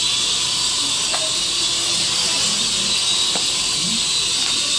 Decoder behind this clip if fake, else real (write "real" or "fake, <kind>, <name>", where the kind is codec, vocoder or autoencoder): real